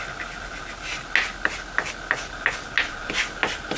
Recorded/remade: recorded